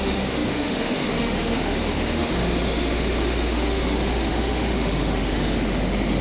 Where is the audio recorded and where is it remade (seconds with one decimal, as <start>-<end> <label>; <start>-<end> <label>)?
0.0-6.2 remade